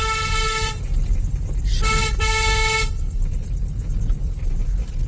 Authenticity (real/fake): real